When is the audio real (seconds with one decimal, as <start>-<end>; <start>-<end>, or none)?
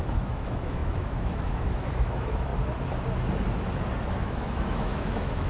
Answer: 2.5-4.1